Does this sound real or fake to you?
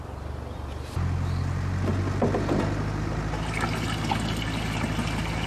real